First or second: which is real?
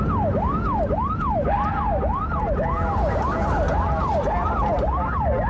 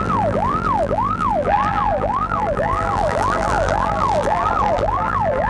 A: first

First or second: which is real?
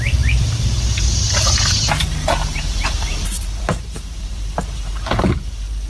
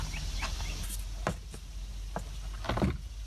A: second